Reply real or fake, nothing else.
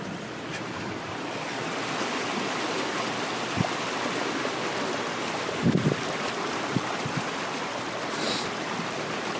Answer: fake